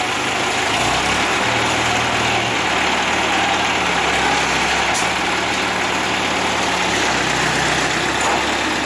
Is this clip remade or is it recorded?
recorded